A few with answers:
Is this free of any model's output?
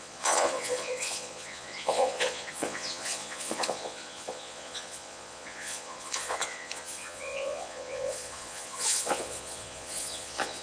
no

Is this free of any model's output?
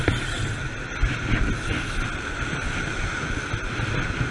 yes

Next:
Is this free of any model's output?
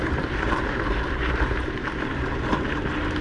no